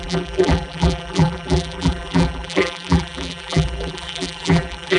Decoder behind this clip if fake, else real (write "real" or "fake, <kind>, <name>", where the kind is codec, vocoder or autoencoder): fake, vocoder, BigVGAN v2